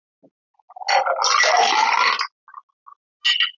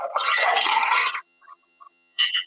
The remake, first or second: second